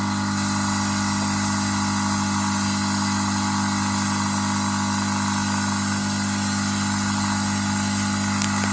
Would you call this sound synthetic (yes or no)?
no